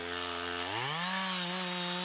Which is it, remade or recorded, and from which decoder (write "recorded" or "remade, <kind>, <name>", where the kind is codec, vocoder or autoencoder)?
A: recorded